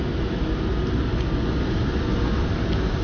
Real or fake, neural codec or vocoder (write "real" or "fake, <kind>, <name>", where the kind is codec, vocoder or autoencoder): real